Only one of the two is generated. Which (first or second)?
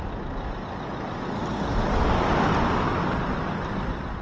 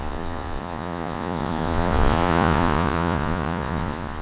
second